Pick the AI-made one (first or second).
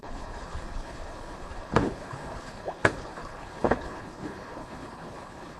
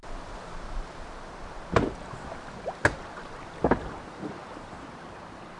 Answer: first